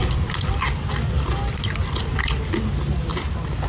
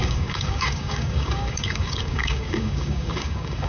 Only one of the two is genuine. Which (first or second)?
first